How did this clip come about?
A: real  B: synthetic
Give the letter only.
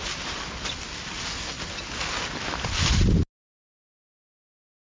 A